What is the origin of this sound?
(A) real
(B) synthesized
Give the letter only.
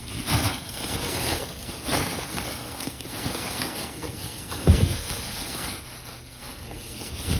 B